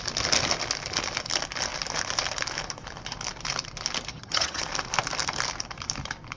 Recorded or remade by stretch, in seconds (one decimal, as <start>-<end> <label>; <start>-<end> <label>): 0.0-4.1 recorded; 4.1-4.6 remade; 4.6-6.4 recorded